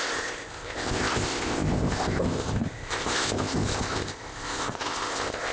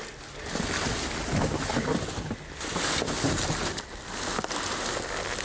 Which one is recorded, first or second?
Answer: second